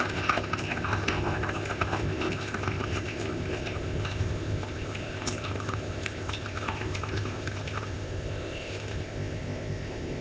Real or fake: fake